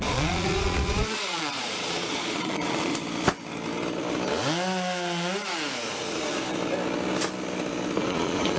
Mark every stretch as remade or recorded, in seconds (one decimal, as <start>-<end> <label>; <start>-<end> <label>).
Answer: 0.0-2.9 remade; 2.9-8.0 recorded; 8.0-8.6 remade